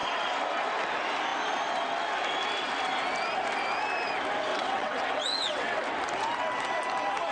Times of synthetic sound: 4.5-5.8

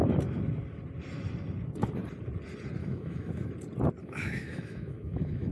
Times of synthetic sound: 2.8-3.5; 4.0-5.5

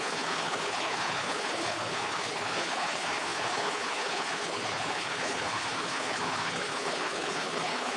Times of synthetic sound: 0.0-8.0

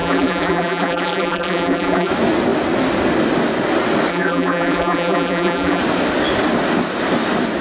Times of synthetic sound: 0.0-2.1; 4.1-5.8

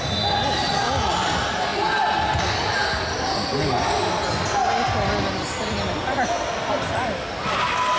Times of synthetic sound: none

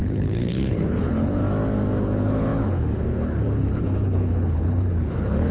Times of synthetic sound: 0.0-1.4; 2.0-5.5